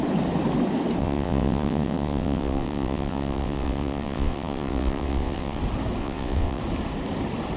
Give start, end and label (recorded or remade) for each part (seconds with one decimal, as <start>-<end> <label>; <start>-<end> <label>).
0.0-1.0 recorded; 1.0-5.6 remade; 5.6-6.0 recorded; 6.0-6.6 remade; 6.6-7.6 recorded